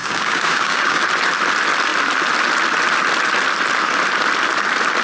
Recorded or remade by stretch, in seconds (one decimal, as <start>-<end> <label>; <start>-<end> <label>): 0.0-1.0 remade; 1.0-5.0 recorded